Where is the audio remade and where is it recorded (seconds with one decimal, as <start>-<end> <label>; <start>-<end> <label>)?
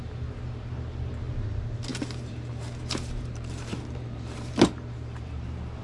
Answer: 0.0-1.9 recorded; 1.9-5.8 remade